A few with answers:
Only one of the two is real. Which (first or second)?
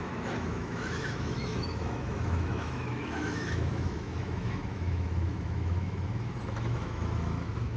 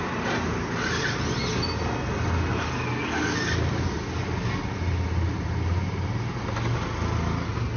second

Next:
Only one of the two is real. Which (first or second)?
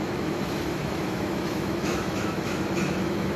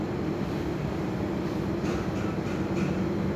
second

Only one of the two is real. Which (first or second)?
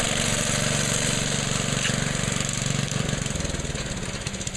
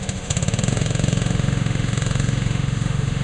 first